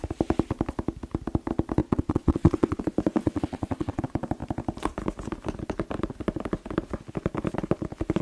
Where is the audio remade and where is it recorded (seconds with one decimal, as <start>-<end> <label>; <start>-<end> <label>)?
0.0-1.8 recorded; 1.8-2.8 remade; 2.8-3.2 recorded; 3.2-4.0 remade; 4.0-8.2 recorded